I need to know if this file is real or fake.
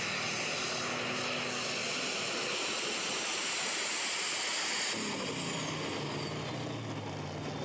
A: real